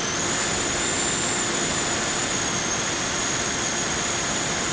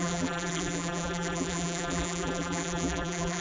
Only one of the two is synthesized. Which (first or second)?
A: second